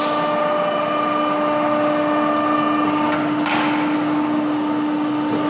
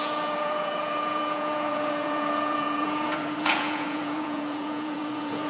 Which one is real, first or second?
first